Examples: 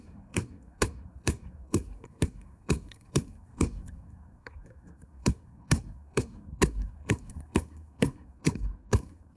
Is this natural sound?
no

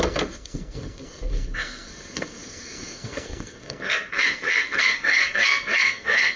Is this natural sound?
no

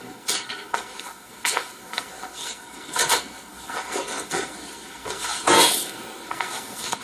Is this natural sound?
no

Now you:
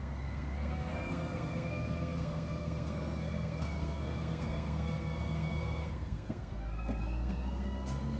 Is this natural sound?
no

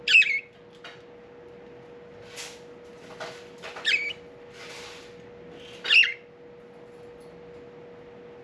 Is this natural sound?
yes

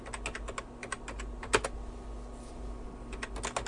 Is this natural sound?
yes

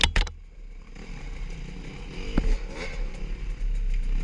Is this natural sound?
yes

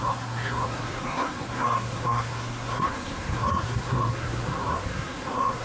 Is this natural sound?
no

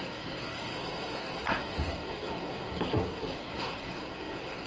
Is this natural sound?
no